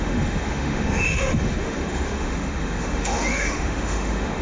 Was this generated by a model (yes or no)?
yes